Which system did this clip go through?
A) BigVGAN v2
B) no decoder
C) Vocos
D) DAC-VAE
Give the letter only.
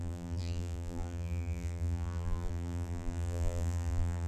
A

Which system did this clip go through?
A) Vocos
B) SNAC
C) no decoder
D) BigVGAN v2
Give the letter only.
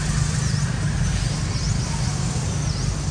C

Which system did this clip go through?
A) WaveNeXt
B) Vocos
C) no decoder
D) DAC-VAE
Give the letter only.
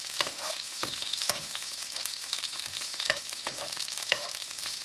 D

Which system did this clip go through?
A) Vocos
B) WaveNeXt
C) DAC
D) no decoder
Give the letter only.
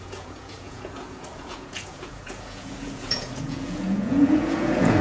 A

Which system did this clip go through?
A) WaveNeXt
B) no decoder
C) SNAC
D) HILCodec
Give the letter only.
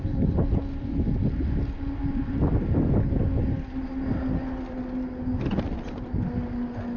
B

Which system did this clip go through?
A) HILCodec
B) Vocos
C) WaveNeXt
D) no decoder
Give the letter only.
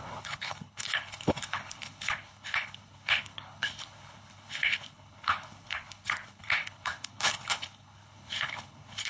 A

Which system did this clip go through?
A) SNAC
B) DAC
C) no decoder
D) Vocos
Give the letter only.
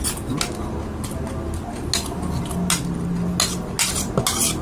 C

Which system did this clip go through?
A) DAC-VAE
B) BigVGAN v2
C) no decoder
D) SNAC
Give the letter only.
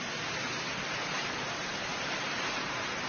B